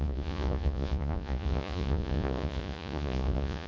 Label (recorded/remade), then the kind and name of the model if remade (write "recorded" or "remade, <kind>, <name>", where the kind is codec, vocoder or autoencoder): remade, vocoder, Vocos